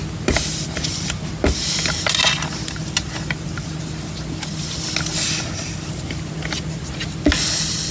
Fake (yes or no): no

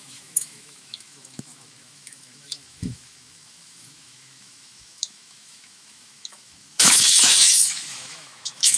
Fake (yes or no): yes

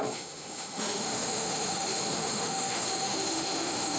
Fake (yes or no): yes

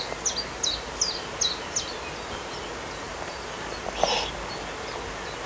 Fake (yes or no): no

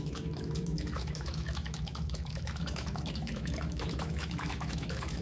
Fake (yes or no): yes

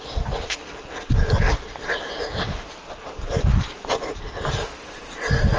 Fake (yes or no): no